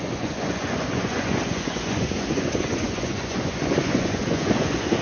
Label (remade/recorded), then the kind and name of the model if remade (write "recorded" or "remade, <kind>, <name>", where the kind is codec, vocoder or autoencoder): remade, vocoder, Vocos